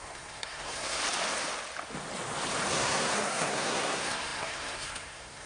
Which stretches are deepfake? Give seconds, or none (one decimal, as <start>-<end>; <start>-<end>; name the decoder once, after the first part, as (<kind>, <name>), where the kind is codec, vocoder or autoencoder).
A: 0.0-1.0 (codec, SNAC); 2.7-5.5